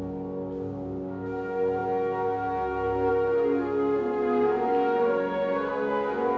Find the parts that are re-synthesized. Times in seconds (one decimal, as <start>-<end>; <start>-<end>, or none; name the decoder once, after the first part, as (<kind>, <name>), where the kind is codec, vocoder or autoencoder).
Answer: none